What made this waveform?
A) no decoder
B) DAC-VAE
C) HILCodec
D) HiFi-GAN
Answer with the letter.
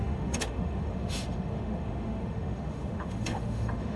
B